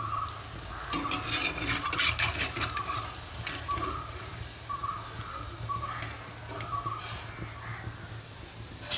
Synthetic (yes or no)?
no